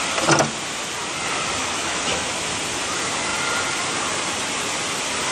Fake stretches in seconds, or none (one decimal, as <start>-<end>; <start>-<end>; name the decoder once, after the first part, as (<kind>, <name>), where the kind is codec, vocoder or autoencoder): 1.6-2.3 (autoencoder, DAC-VAE)